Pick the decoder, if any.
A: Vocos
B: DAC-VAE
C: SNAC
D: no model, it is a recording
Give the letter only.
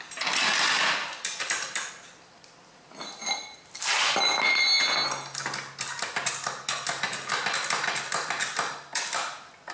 D